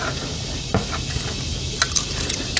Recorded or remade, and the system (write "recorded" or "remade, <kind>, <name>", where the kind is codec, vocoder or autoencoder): recorded